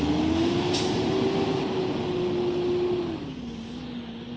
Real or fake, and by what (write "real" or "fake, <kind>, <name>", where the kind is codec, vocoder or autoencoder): real